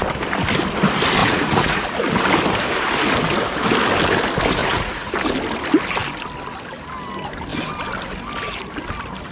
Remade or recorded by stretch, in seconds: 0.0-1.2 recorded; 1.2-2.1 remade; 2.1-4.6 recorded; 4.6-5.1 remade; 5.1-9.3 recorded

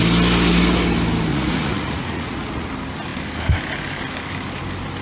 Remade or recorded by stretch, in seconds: 0.0-1.3 recorded; 1.3-2.7 remade; 2.7-5.0 recorded